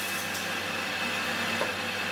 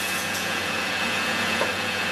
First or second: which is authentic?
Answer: first